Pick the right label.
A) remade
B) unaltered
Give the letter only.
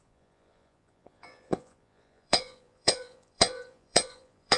A